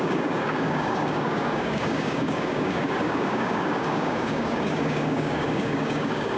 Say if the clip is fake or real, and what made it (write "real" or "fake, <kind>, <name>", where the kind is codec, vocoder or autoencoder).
fake, codec, DAC